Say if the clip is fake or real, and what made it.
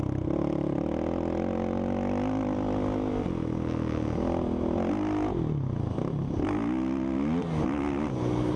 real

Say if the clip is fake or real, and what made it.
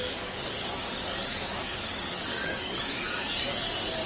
fake, codec, DAC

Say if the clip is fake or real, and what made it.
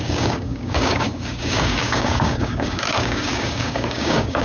fake, codec, DAC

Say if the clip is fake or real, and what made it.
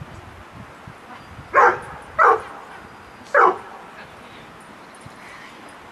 real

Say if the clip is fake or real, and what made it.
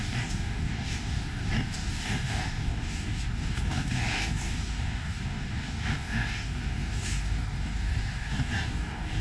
fake, codec, DAC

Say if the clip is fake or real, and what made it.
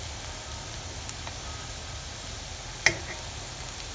real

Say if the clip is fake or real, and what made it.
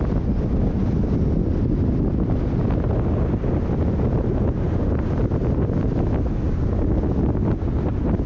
real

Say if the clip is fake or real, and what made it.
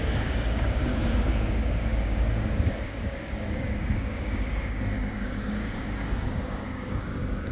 fake, codec, DAC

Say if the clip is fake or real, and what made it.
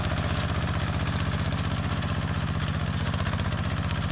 real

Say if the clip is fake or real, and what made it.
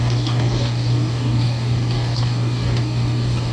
fake, codec, DAC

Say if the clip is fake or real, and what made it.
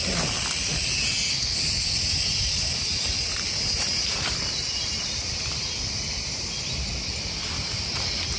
real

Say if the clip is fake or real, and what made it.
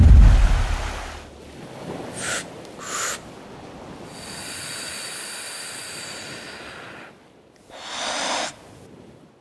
real